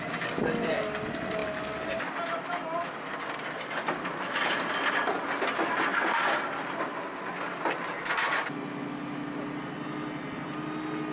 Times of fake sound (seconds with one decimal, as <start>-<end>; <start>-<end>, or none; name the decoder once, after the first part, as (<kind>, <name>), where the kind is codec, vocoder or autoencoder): none